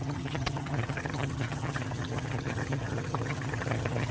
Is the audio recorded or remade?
remade